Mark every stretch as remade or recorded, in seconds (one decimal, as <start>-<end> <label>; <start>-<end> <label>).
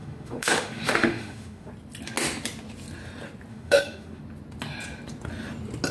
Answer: 0.0-1.7 remade; 1.7-3.5 recorded; 3.5-4.2 remade; 4.2-5.9 recorded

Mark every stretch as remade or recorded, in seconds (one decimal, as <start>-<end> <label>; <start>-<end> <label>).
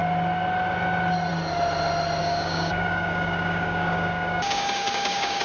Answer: 0.0-2.2 recorded; 2.2-5.4 remade